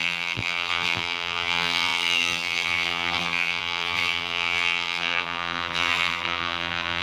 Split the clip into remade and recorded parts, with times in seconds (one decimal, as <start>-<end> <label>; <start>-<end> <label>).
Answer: 0.0-7.0 remade